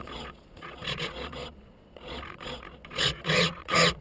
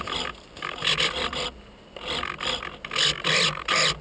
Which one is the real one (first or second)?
second